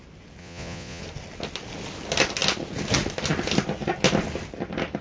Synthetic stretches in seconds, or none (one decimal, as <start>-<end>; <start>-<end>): 0.4-1.0